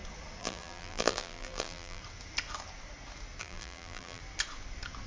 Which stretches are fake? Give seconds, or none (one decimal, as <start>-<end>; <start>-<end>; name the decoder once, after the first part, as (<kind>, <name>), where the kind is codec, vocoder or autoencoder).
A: 0.4-2.0 (vocoder, BigVGAN v2); 3.4-4.2